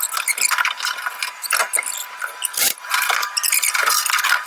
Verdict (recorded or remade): recorded